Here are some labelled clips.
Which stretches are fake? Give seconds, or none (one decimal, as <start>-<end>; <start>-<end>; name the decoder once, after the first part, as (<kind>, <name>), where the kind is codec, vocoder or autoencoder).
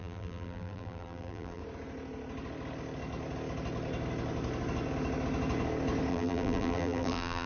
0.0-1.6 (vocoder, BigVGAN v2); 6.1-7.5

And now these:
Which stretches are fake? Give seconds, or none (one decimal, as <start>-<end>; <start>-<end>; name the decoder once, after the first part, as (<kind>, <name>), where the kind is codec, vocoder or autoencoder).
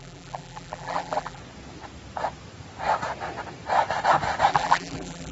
0.0-1.4 (vocoder, BigVGAN v2); 4.5-5.3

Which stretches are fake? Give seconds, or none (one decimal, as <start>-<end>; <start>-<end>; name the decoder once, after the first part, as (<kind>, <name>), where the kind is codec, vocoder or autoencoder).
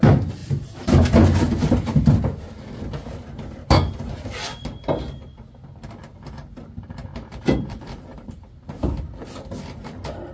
0.4-1.7 (vocoder, BigVGAN v2); 7.1-8.3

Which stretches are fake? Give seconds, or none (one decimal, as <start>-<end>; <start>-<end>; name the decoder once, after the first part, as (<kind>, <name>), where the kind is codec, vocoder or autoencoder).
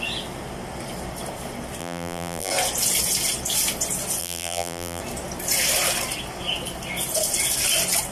1.8-2.5 (vocoder, BigVGAN v2); 4.2-5.0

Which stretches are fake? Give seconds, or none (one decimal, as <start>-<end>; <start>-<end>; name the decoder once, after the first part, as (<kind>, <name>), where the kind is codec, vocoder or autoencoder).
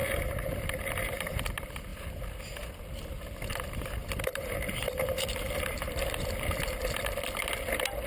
0.0-1.4 (vocoder, BigVGAN v2); 4.0-7.4